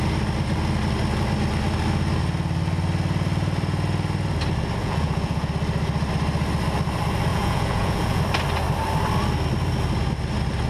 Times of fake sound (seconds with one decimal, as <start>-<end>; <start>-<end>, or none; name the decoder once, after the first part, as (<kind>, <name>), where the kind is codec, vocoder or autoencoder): 4.8-5.5 (vocoder, Vocos); 7.3-8.2